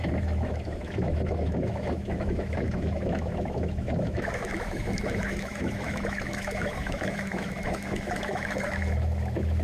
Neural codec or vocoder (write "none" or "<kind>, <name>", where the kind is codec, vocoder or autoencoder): autoencoder, DAC-VAE